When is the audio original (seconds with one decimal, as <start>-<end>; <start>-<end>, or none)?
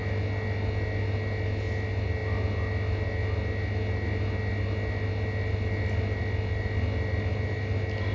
0.0-8.1